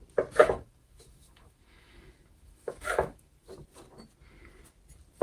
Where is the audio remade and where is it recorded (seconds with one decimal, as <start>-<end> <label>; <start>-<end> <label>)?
0.0-0.4 recorded; 0.4-3.5 remade; 3.5-5.2 recorded